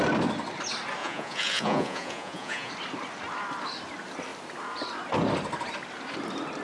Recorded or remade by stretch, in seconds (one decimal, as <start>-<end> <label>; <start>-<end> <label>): 0.0-1.0 recorded; 1.0-2.7 remade; 2.7-6.6 recorded